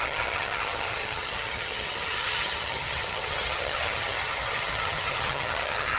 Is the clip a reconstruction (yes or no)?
yes